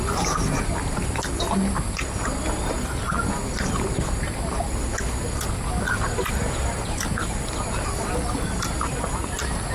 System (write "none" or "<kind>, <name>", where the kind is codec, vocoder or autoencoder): none